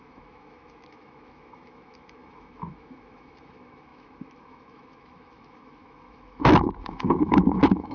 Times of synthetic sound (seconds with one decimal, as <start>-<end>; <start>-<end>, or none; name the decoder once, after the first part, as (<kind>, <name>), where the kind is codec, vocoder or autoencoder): 0.0-7.9 (autoencoder, DAC-VAE)